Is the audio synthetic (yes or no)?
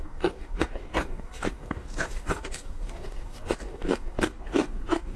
yes